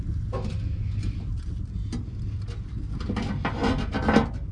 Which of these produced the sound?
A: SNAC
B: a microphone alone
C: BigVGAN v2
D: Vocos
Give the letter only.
B